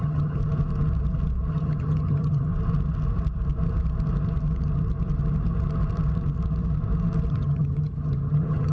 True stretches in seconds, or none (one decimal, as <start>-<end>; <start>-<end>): 0.4-1.5; 2.5-7.3